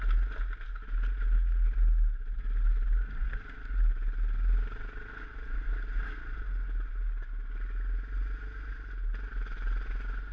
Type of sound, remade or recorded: recorded